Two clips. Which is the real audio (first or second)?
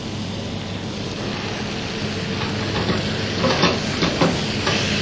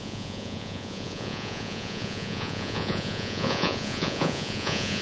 first